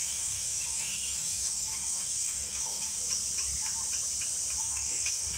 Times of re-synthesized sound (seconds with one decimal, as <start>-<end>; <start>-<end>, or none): 0.0-3.0; 4.6-5.4